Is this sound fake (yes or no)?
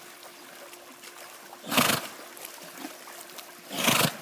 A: no